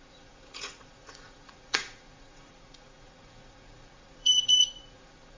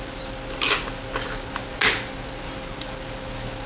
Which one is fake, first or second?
first